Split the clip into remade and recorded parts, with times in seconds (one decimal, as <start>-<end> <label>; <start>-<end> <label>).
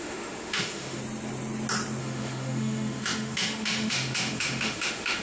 0.0-1.0 remade; 1.0-2.0 recorded; 2.0-5.2 remade